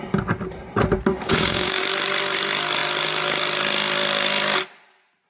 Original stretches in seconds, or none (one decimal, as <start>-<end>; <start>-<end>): 0.0-1.1; 1.8-5.3